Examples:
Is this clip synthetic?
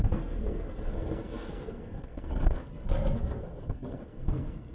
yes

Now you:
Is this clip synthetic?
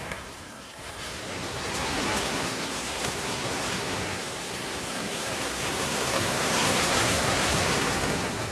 yes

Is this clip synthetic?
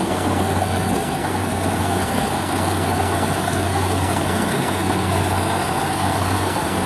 yes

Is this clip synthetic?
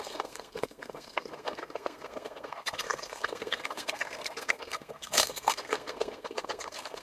yes